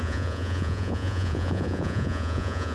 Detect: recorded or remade remade